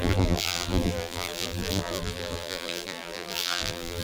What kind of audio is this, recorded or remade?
remade